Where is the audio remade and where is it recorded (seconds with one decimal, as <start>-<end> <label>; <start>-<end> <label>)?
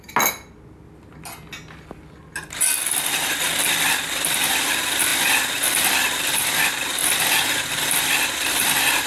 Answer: 0.0-9.1 recorded